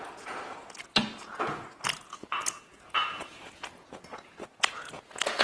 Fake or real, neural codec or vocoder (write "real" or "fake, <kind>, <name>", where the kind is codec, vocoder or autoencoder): fake, vocoder, Vocos